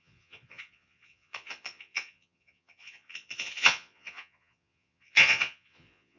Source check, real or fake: fake